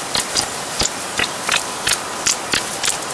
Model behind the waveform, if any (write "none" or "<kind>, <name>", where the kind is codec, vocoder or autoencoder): none